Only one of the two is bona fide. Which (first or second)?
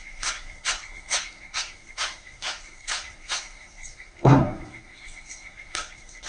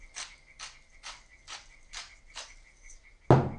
second